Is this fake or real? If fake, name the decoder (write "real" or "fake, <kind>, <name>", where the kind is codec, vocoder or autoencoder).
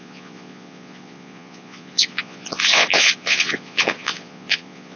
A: fake, vocoder, Vocos